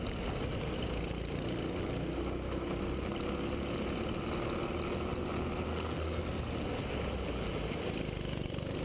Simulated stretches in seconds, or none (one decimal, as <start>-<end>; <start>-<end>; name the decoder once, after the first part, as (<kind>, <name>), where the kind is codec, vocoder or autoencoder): 5.7-6.2 (codec, SNAC)